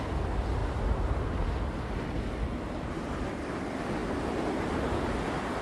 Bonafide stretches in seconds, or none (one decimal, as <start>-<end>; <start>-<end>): 0.0-5.6